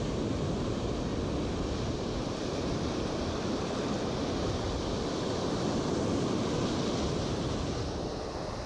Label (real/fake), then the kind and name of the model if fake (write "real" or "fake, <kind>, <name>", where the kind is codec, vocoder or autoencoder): real